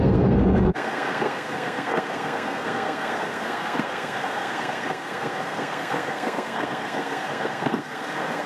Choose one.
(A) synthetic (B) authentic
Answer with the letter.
A